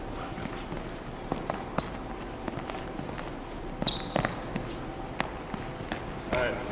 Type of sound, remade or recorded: recorded